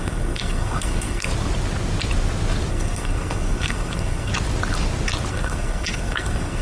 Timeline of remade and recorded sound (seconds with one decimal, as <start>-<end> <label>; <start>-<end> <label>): 0.0-1.3 remade; 1.3-2.7 recorded; 2.7-4.3 remade; 4.3-5.3 recorded; 5.3-6.6 remade